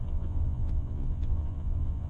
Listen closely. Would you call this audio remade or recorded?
remade